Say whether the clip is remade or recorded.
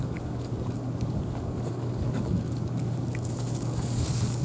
remade